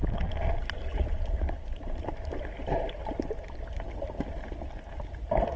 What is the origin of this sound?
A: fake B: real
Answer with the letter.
B